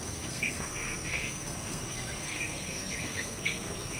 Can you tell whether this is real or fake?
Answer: fake